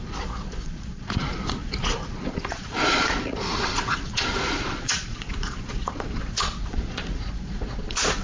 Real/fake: fake